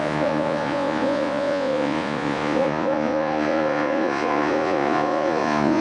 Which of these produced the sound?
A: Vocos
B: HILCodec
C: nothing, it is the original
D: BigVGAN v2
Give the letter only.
A